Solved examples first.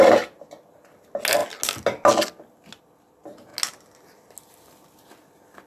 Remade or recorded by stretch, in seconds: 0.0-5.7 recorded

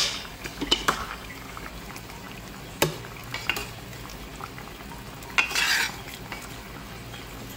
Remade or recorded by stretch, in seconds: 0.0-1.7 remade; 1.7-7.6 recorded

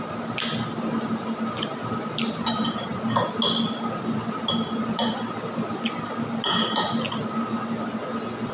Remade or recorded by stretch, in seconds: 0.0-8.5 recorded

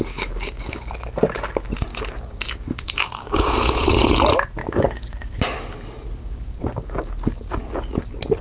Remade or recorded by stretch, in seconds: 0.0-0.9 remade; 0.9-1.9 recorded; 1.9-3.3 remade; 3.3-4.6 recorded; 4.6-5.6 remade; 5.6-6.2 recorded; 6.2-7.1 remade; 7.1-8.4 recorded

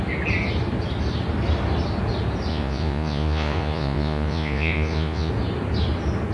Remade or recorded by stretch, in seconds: 0.0-2.5 recorded; 2.5-5.3 remade; 5.3-6.3 recorded

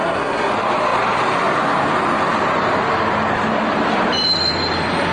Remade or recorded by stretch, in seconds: 0.0-0.5 remade; 0.5-5.1 recorded